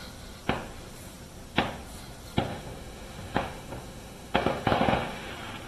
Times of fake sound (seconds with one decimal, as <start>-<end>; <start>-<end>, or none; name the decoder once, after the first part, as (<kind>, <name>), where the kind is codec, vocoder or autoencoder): 2.5-5.3 (autoencoder, DAC-VAE)